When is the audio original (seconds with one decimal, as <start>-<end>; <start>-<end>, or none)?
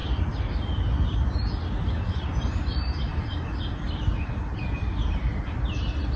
0.0-2.1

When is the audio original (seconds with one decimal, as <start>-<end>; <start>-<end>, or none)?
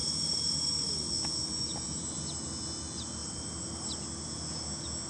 0.9-3.2; 4.0-5.1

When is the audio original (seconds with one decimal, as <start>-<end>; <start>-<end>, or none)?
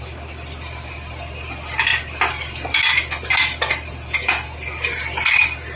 0.0-5.8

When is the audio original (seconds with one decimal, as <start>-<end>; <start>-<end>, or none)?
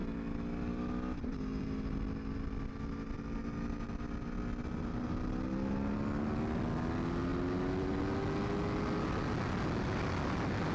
2.7-7.3; 8.0-10.7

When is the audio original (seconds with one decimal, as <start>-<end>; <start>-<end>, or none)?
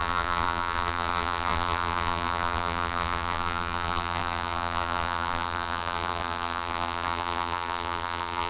none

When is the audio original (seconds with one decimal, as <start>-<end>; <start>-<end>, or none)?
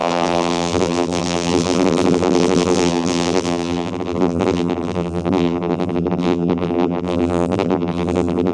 none